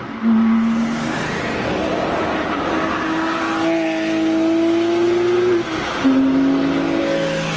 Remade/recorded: recorded